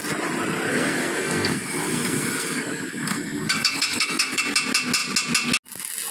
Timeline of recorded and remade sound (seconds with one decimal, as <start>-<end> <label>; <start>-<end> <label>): 0.0-0.7 recorded; 0.7-4.4 remade; 4.4-6.1 recorded